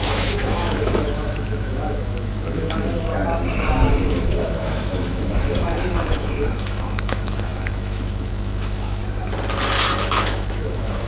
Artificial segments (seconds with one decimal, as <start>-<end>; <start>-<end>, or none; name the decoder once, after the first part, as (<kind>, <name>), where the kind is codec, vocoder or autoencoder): 0.0-3.1 (autoencoder, DAC-VAE); 3.9-9.0; 10.0-11.1